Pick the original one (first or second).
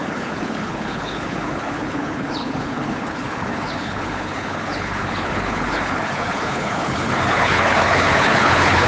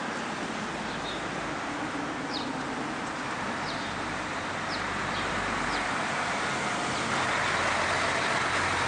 second